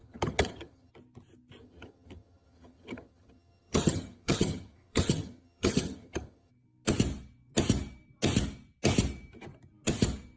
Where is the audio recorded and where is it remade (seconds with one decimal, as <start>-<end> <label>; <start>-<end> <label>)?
0.0-0.9 remade; 0.9-1.6 recorded; 1.6-6.5 remade; 6.5-10.4 recorded